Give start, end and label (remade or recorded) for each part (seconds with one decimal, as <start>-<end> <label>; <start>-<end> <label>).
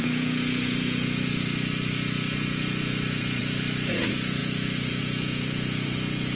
0.0-1.3 remade; 1.3-2.3 recorded; 2.3-3.4 remade; 3.4-3.9 recorded; 3.9-6.4 remade